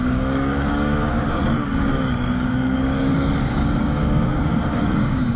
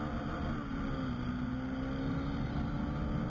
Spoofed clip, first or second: first